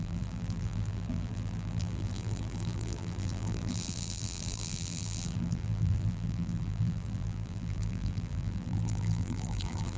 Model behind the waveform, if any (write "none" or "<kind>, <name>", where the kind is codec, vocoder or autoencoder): vocoder, BigVGAN v2